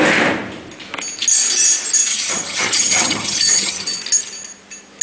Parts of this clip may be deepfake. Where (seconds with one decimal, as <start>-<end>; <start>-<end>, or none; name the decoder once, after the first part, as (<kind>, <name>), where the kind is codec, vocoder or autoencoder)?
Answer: 2.1-4.0 (vocoder, HiFi-GAN)